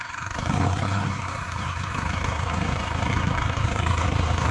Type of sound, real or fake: fake